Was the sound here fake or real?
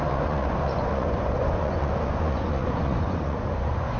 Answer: fake